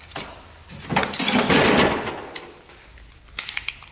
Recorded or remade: recorded